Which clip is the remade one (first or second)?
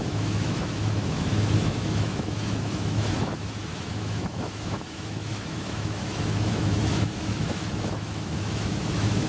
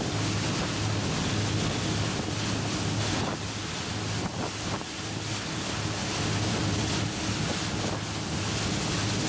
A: first